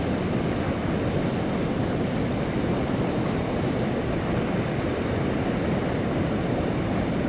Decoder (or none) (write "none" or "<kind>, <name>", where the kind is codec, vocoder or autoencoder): none